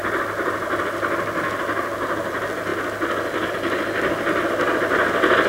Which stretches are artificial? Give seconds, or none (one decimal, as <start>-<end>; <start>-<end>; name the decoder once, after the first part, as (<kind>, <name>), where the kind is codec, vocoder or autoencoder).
none